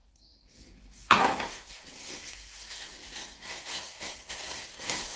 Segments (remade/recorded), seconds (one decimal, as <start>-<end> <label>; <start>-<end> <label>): 0.0-5.2 remade

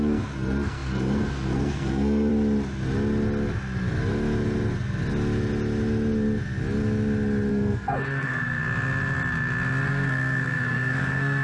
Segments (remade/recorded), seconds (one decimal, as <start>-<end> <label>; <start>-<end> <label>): 0.0-2.3 remade; 2.3-7.5 recorded; 7.5-8.6 remade; 8.6-9.9 recorded; 9.9-11.4 remade

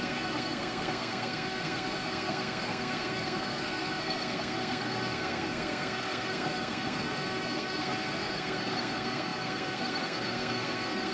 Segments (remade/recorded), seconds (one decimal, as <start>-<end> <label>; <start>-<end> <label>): 0.0-11.1 remade

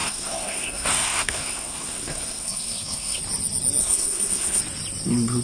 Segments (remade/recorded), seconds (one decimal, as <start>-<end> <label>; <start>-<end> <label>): 0.0-3.2 remade; 3.2-3.8 recorded; 3.8-4.6 remade; 4.6-5.4 recorded

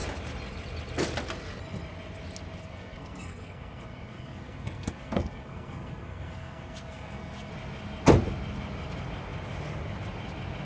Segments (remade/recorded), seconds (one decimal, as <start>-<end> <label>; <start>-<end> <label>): 0.0-2.6 recorded; 2.6-7.5 remade; 7.5-10.7 recorded

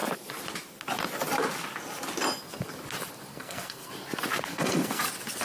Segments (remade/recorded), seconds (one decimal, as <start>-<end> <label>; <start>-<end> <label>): 0.0-3.3 recorded; 3.3-3.9 remade; 3.9-4.5 recorded; 4.5-5.0 remade; 5.0-5.4 recorded